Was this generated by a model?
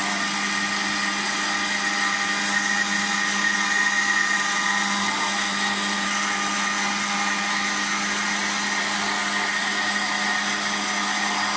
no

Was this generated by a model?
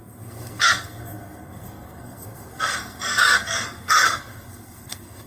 yes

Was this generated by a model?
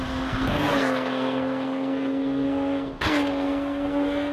yes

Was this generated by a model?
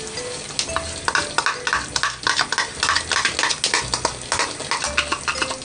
no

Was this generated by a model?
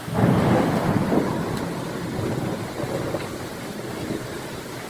no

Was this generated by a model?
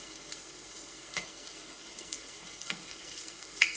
yes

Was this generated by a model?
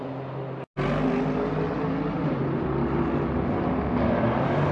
no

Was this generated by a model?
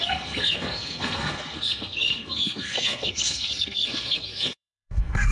yes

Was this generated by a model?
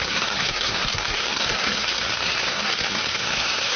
yes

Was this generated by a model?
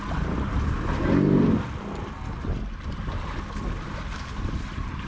no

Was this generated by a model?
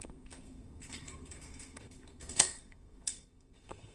yes